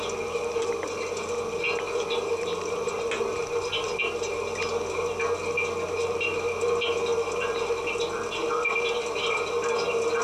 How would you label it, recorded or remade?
recorded